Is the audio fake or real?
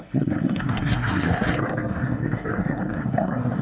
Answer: fake